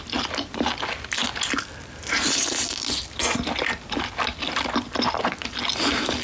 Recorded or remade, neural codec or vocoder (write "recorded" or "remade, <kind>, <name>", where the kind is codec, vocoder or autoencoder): recorded